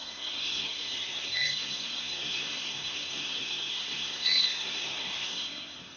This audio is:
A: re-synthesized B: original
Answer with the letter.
A